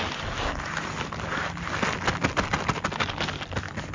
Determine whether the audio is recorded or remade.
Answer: recorded